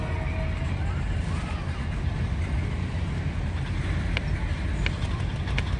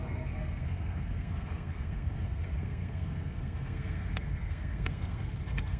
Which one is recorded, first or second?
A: first